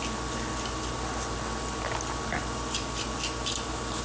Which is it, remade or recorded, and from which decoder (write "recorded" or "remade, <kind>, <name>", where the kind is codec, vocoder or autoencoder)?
recorded